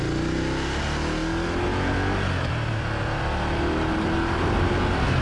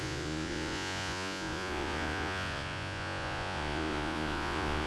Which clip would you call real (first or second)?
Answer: first